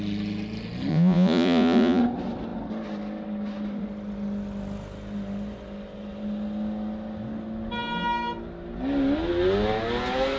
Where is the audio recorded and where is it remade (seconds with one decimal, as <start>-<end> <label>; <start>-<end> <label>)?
0.0-0.9 recorded; 0.9-2.0 remade; 2.0-10.4 recorded